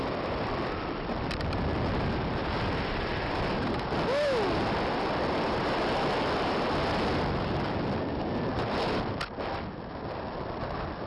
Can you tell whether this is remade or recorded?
recorded